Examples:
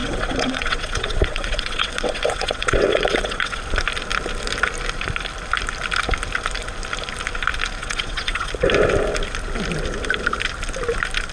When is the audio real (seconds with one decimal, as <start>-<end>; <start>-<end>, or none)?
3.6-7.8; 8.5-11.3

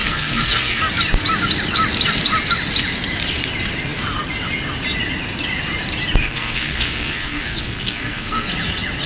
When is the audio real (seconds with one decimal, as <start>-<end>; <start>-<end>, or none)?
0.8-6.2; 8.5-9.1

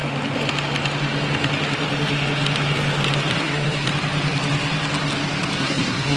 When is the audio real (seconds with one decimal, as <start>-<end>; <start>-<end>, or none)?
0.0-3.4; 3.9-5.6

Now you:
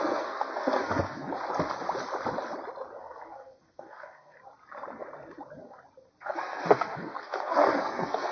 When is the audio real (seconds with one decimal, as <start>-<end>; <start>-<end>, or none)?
1.3-3.0; 4.4-6.2

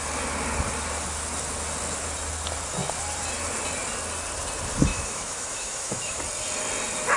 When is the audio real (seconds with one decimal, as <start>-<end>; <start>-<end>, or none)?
0.0-4.9; 6.2-7.2

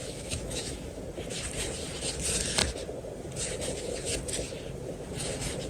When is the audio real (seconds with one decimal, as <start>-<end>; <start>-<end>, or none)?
1.0-5.7